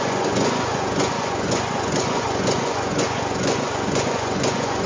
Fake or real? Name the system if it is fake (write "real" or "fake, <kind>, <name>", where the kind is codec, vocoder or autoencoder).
fake, vocoder, Vocos